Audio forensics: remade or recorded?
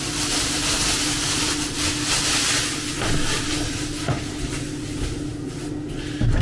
recorded